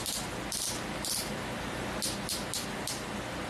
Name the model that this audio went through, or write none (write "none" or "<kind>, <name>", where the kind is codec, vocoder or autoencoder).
none